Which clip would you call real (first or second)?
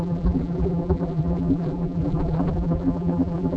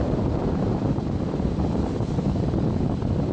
second